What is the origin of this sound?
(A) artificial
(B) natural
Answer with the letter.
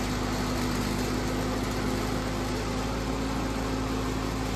B